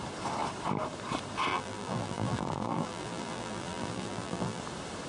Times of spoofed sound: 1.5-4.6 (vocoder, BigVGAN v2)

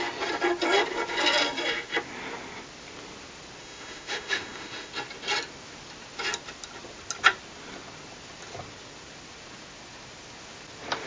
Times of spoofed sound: 3.6-4.9 (autoencoder, DAC-VAE)